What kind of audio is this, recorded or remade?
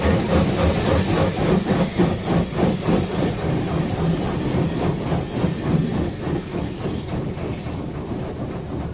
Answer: recorded